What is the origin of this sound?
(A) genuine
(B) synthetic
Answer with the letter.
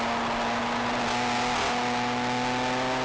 A